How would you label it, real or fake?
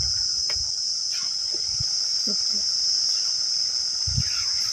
real